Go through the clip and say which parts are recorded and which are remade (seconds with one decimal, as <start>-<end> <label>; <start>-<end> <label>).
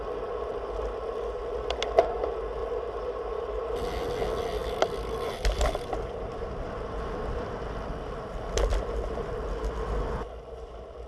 0.0-2.6 recorded; 2.6-3.6 remade; 3.6-4.6 recorded; 4.6-6.3 remade; 6.3-11.1 recorded